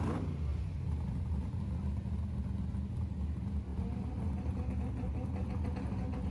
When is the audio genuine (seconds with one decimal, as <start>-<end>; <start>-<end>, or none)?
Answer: 0.0-6.3